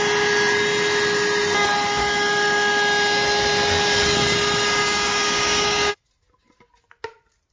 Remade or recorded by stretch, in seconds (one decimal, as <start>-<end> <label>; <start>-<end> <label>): 0.0-4.8 recorded; 4.8-5.9 remade; 5.9-7.5 recorded